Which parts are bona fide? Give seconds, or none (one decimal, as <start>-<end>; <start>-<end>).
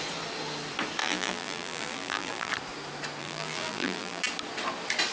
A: 0.0-1.0; 2.5-3.2; 4.2-5.1